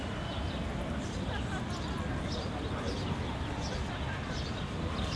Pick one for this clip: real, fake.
real